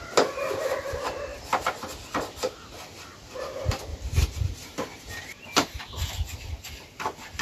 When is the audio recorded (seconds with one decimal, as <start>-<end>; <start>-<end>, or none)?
0.0-3.9; 5.9-7.4